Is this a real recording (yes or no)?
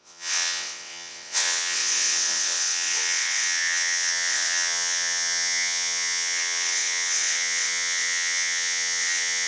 no